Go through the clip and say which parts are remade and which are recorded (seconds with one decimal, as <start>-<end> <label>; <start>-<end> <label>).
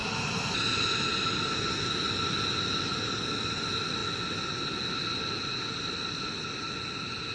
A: 0.0-7.3 recorded